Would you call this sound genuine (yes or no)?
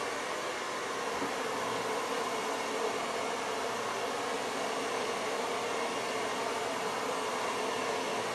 yes